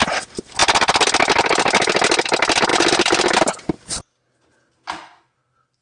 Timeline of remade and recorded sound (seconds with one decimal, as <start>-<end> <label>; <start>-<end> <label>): 0.0-2.7 recorded; 2.7-4.0 remade; 4.0-5.8 recorded

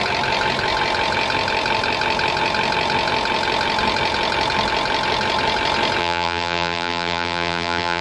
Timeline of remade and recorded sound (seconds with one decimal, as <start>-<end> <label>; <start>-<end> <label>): 0.0-6.0 recorded; 6.0-8.0 remade

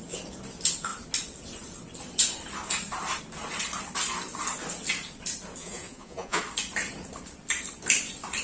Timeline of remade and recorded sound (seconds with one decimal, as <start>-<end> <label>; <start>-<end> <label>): 0.0-5.6 recorded; 5.6-6.4 remade; 6.4-8.4 recorded

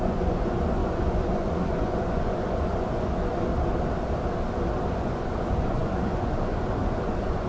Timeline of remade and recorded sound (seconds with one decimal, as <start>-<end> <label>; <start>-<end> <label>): 0.0-3.5 remade; 3.5-4.9 recorded; 4.9-7.5 remade

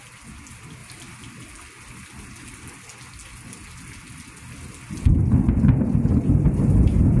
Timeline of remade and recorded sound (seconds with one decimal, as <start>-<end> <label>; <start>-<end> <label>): 0.0-7.2 recorded

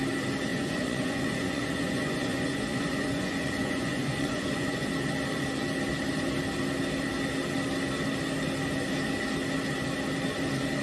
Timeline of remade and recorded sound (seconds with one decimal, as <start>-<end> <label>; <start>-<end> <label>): 0.0-0.5 recorded; 0.5-4.9 remade; 4.9-10.8 recorded

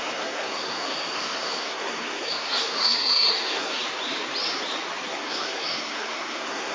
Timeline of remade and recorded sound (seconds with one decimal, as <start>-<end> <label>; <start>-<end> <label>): 0.0-3.8 remade; 3.8-5.1 recorded; 5.1-6.7 remade